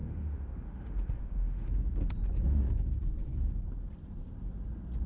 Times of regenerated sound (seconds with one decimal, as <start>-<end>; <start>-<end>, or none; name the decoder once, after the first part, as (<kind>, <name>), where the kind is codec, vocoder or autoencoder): 0.0-1.7 (autoencoder, DAC-VAE)